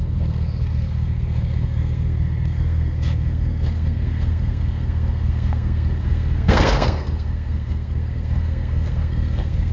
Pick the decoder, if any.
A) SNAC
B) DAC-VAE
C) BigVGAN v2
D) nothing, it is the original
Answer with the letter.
A